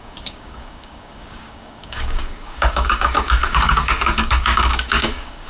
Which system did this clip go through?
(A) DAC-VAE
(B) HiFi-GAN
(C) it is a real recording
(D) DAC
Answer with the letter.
D